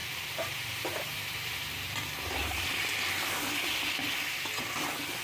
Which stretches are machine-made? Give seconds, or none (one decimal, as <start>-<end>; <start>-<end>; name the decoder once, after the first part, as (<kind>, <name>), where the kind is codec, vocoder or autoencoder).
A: 0.0-3.1 (vocoder, BigVGAN v2)